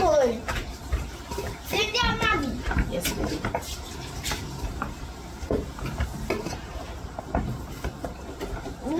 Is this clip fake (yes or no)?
yes